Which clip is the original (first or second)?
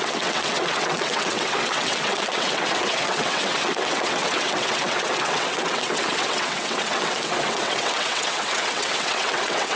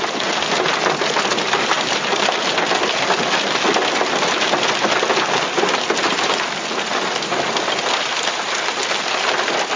second